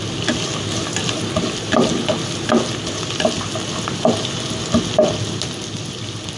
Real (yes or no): yes